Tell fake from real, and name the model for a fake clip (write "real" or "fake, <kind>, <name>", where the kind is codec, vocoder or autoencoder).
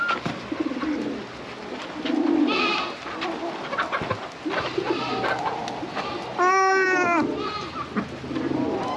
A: real